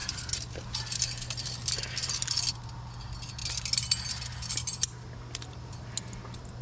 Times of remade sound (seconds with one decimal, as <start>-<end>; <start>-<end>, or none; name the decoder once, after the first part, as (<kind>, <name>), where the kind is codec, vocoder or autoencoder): none